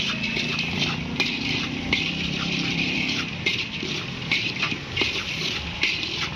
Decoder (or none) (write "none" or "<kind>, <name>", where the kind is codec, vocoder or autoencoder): vocoder, BigVGAN v2